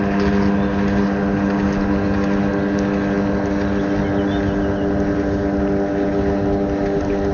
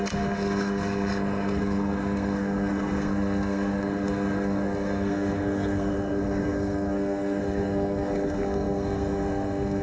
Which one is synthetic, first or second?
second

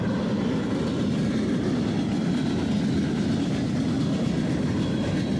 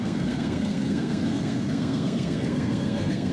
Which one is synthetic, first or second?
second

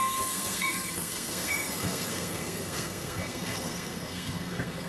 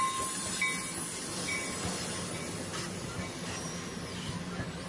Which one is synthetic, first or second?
first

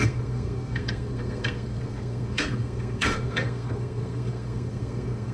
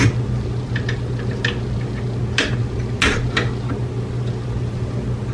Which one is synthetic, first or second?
first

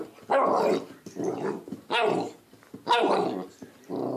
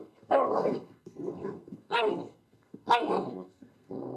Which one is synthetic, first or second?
second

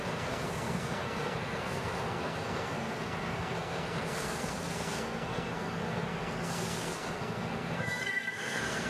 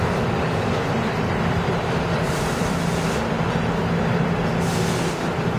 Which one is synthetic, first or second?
first